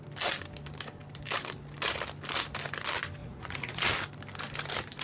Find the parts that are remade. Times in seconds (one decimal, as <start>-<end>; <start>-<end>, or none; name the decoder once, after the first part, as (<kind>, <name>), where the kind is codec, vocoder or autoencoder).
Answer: 3.2-3.8 (vocoder, Vocos)